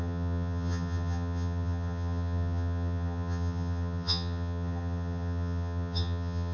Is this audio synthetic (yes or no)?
yes